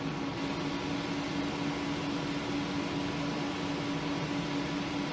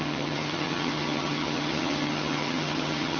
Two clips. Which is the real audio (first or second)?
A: first